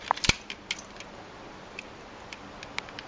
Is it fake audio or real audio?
real